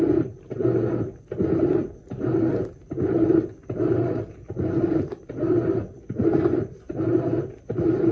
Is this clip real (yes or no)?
yes